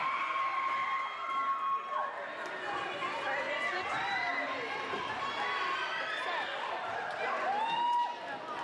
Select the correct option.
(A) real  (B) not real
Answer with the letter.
A